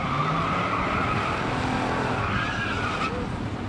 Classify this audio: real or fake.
real